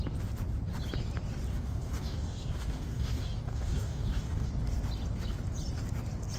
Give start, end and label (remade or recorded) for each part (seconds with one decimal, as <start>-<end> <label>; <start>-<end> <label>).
0.0-1.5 recorded; 1.5-4.5 remade; 4.5-6.4 recorded